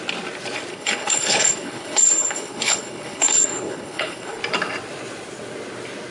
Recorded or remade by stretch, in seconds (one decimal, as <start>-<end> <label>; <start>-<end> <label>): 0.0-0.7 recorded; 0.7-4.4 remade; 4.4-6.1 recorded